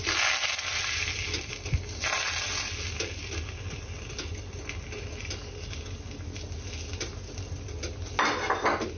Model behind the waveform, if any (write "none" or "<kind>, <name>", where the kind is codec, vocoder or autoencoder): none